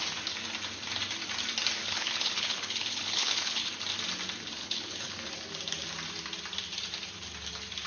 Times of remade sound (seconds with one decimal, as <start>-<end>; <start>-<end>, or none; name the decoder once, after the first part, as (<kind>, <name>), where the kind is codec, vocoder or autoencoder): 1.8-3.7 (codec, HILCodec); 4.6-5.3

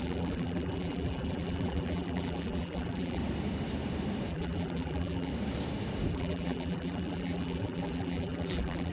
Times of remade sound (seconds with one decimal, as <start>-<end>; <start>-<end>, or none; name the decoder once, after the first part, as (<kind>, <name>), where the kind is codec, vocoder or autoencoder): 0.0-3.2 (vocoder, BigVGAN v2); 4.3-5.3; 6.1-8.9